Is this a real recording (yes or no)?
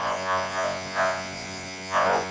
no